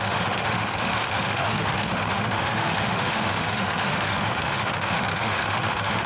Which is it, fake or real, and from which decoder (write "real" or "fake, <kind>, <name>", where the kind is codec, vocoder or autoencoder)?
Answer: fake, autoencoder, DAC-VAE